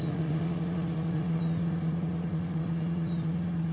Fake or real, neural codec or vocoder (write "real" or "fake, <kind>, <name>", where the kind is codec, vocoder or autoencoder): fake, vocoder, Vocos